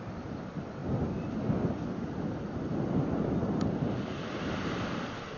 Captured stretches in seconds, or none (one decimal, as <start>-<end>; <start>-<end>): 0.0-5.4